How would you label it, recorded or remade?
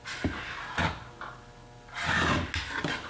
recorded